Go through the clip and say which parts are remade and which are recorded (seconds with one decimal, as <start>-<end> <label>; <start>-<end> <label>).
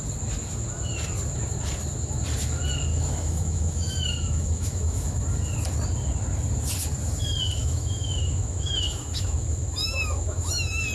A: 0.0-2.9 recorded; 2.9-5.2 remade; 5.2-7.6 recorded; 7.6-10.9 remade